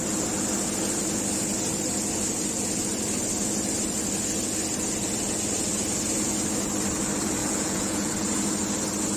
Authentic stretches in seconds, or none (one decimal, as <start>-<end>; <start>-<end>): 0.0-7.4; 8.1-9.2